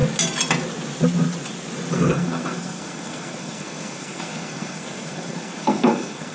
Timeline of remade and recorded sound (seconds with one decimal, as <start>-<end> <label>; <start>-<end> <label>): 0.0-1.9 recorded; 1.9-6.3 remade